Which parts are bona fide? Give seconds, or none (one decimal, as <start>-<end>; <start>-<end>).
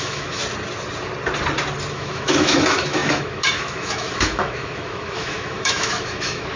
0.4-1.9